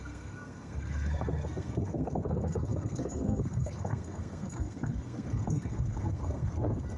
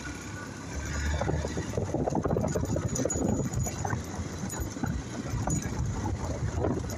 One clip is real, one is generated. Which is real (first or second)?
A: second